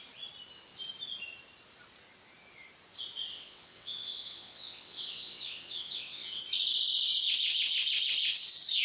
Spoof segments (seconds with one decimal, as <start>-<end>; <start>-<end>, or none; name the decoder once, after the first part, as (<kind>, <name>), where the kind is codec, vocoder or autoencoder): 3.3-6.4 (vocoder, WaveNeXt)